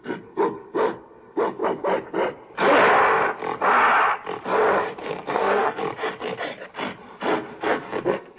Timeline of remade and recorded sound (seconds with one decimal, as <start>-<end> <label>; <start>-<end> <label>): 0.0-5.0 recorded; 5.0-5.8 remade; 5.8-7.5 recorded; 7.5-8.4 remade